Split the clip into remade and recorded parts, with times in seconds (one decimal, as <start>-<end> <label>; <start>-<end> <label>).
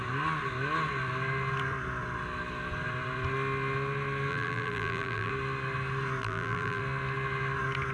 0.0-4.3 recorded; 4.3-5.3 remade; 5.3-6.2 recorded; 6.2-6.8 remade; 6.8-7.9 recorded